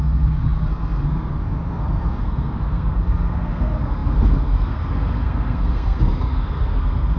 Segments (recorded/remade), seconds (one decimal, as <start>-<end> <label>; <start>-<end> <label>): 0.0-7.2 remade